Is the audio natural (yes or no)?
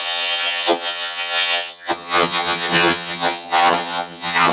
no